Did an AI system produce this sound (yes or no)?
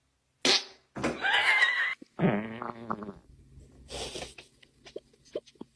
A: no